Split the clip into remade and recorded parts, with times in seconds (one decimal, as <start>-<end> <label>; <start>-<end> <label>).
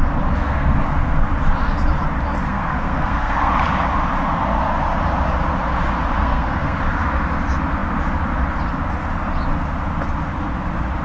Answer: 0.0-0.4 recorded; 0.4-1.3 remade; 1.3-2.4 recorded; 2.4-3.5 remade; 3.5-6.2 recorded; 6.2-6.8 remade; 6.8-11.0 recorded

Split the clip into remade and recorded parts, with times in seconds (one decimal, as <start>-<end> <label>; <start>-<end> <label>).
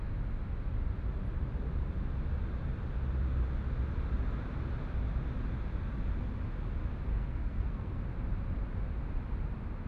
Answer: 0.0-7.1 recorded; 7.1-8.0 remade; 8.0-9.9 recorded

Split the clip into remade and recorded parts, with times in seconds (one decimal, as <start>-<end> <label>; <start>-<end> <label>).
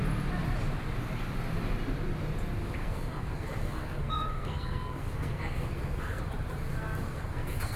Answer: 0.0-2.8 recorded; 2.8-6.2 remade; 6.2-6.7 recorded; 6.7-7.8 remade